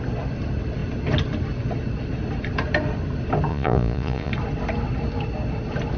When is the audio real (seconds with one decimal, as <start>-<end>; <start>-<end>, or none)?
0.0-3.5; 4.3-6.0